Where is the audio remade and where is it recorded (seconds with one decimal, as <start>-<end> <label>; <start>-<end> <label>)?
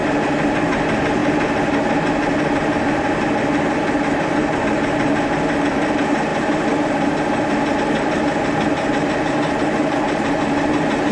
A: 0.0-11.1 recorded